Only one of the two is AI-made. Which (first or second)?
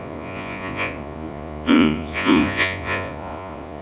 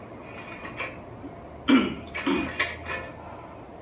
first